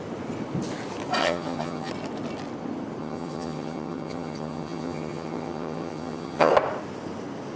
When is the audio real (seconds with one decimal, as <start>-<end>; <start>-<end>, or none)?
0.0-1.2; 1.9-3.0; 6.5-7.6